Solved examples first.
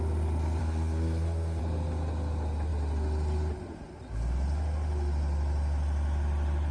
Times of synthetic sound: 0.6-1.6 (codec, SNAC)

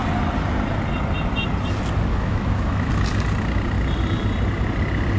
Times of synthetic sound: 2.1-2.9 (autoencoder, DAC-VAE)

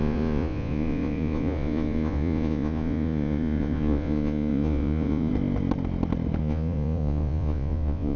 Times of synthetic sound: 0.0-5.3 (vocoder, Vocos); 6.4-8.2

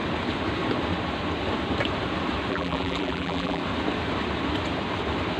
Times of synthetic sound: 2.5-3.6 (vocoder, BigVGAN v2)

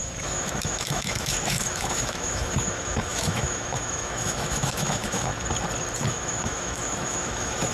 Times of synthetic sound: 0.0-5.3 (autoencoder, DAC-VAE); 6.0-7.7

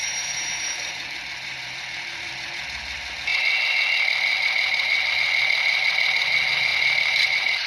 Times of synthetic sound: 0.0-2.3 (vocoder, BigVGAN v2); 6.7-7.7